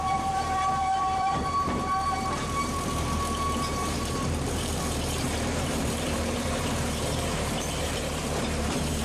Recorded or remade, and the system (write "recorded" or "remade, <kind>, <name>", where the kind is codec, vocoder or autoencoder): remade, vocoder, BigVGAN v2